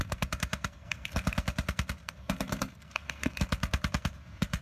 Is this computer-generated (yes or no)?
yes